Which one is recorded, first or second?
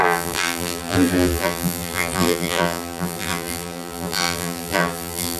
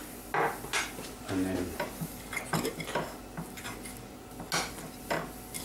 second